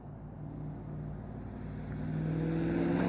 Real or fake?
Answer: real